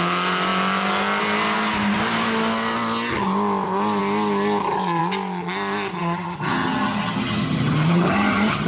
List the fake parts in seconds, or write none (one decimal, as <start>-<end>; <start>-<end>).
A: 6.0-8.7